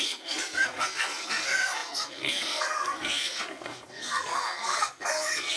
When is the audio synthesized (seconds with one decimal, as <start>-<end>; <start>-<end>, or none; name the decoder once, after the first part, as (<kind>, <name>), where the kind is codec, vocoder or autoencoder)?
0.0-5.6 (codec, SNAC)